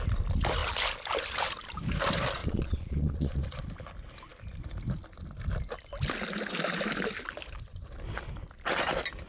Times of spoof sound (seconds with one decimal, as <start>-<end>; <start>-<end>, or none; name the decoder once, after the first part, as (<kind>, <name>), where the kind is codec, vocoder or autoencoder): 2.4-3.6 (vocoder, Vocos)